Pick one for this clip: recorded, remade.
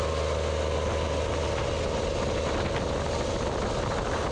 recorded